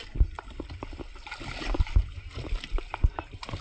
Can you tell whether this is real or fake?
fake